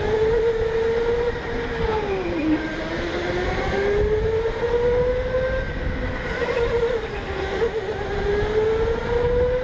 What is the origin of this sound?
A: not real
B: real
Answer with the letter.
B